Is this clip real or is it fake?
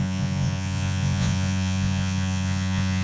fake